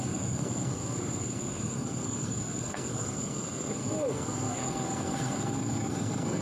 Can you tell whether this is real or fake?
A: fake